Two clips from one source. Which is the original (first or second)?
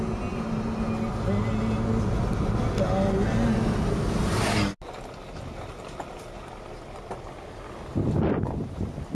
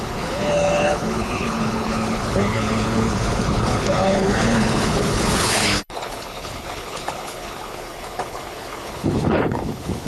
first